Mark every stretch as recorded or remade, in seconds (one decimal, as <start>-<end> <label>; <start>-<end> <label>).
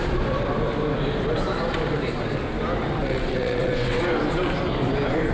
0.0-3.0 recorded; 3.0-4.0 remade; 4.0-5.3 recorded